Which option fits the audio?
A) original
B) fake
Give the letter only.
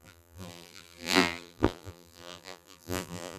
B